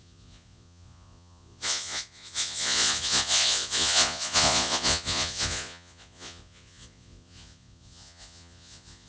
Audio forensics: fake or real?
fake